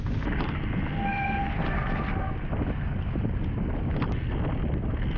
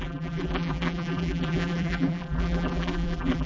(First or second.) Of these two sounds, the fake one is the second